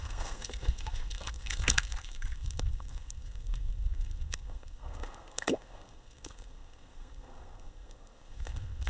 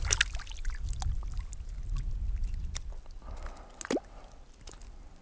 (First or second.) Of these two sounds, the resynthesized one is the first